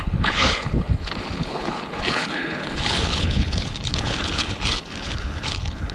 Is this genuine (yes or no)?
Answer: no